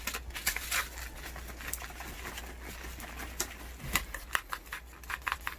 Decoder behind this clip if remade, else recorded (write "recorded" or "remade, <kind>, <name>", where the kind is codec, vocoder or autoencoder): recorded